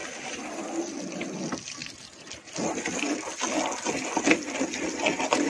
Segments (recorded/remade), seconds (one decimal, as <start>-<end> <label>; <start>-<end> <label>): 0.0-5.5 recorded